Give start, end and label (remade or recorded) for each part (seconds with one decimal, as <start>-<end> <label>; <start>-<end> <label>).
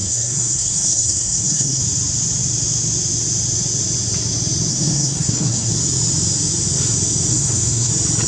0.0-1.8 remade; 1.8-4.7 recorded; 4.7-5.7 remade; 5.7-7.3 recorded; 7.3-7.9 remade; 7.9-8.3 recorded